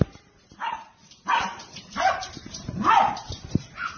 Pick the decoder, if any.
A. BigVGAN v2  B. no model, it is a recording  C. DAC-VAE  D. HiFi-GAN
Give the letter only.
A